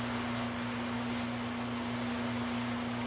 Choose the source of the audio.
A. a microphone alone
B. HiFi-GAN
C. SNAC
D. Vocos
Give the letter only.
A